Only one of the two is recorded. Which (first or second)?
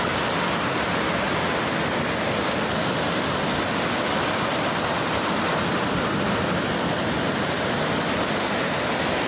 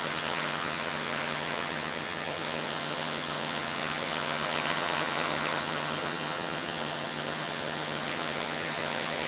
first